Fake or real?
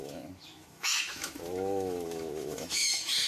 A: fake